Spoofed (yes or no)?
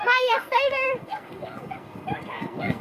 yes